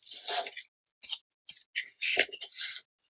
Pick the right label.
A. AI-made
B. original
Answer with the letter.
B